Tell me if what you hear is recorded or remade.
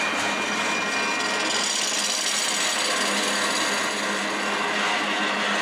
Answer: recorded